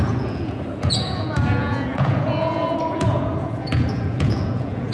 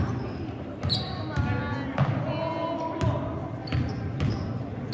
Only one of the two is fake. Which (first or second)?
first